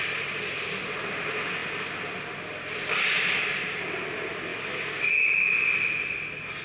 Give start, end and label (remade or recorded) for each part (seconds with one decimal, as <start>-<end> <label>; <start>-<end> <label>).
0.0-6.6 recorded